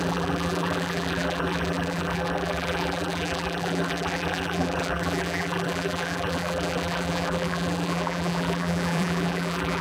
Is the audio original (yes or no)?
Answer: no